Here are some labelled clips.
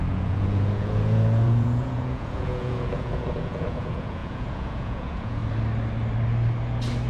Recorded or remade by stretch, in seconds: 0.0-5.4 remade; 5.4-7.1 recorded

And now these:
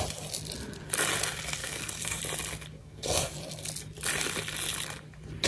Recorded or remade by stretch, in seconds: 0.0-1.6 recorded; 1.6-2.2 remade; 2.2-2.8 recorded; 2.8-3.3 remade; 3.3-5.5 recorded

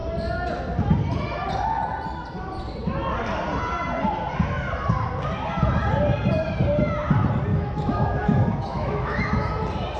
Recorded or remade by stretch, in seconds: 0.0-7.5 recorded; 7.5-9.5 remade; 9.5-10.0 recorded

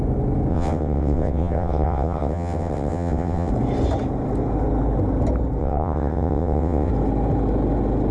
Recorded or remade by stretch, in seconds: 0.0-0.5 recorded; 0.5-3.5 remade; 3.5-5.6 recorded; 5.6-6.9 remade; 6.9-8.1 recorded

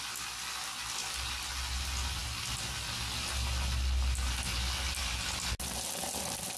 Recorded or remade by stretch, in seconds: 0.0-6.6 recorded

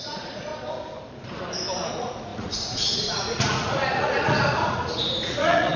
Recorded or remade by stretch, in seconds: 0.0-0.5 remade; 0.5-1.9 recorded; 1.9-5.8 remade

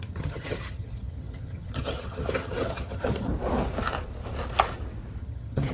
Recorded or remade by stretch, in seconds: 0.0-3.3 remade; 3.3-5.2 recorded; 5.2-5.7 remade